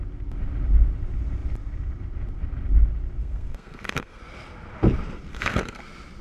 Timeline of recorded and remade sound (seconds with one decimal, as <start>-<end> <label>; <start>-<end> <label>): 0.0-3.2 recorded; 3.2-4.2 remade; 4.2-5.3 recorded; 5.3-5.8 remade; 5.8-6.2 recorded